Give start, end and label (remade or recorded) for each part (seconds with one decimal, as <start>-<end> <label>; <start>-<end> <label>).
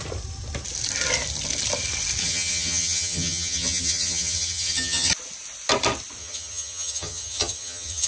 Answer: 0.0-2.2 recorded; 2.2-5.1 remade; 5.1-6.2 recorded; 6.2-8.1 remade